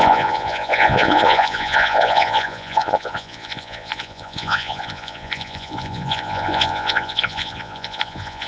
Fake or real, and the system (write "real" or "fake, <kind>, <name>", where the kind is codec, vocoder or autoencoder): fake, vocoder, Vocos